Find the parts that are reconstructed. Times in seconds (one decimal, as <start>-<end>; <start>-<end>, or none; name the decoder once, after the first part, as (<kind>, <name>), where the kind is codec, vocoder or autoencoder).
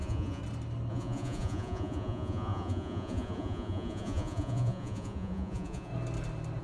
0.0-0.4 (vocoder, Vocos); 0.9-5.9